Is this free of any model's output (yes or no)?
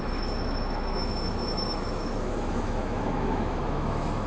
no